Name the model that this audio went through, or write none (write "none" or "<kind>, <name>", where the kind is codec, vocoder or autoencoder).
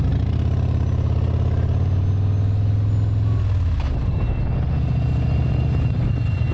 none